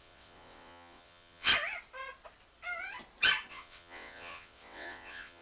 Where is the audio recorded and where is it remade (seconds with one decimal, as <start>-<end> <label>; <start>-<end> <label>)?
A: 0.0-1.5 remade; 1.5-3.5 recorded; 3.5-5.4 remade